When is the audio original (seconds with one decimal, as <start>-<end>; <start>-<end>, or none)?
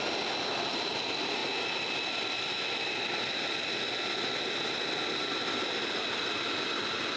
0.0-7.2